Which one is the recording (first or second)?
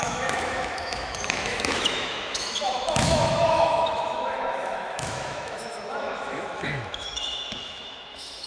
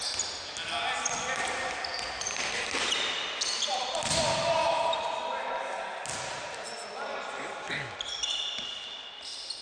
second